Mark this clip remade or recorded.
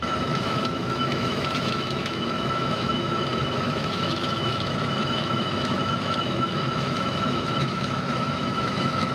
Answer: remade